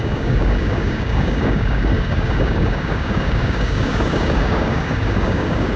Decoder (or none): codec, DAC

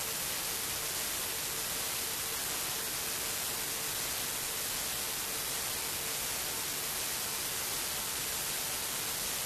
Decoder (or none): none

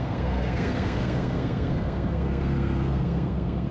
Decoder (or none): codec, SNAC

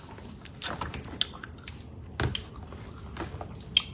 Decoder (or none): none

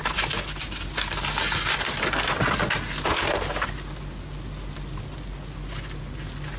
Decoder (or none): none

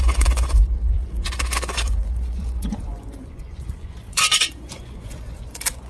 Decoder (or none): vocoder, Vocos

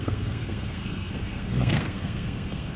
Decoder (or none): codec, SNAC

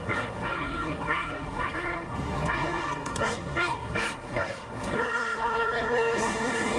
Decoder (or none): codec, SNAC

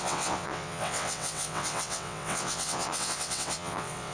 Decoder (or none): vocoder, WaveNeXt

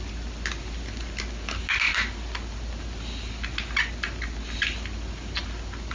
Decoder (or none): none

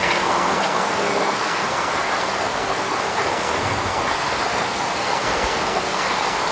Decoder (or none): codec, SNAC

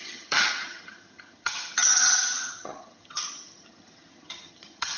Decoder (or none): vocoder, HiFi-GAN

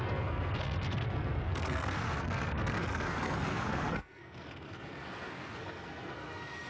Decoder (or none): codec, SNAC